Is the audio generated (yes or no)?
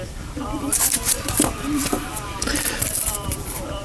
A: yes